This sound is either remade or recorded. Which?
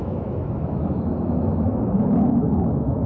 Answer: remade